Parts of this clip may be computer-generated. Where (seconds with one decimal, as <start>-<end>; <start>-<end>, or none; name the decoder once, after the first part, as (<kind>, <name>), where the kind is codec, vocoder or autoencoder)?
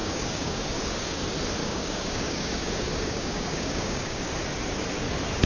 0.0-1.2 (codec, DAC); 1.6-4.3